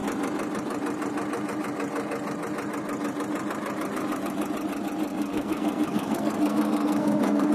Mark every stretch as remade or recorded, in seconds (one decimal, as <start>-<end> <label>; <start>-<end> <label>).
0.0-5.1 recorded; 5.1-7.5 remade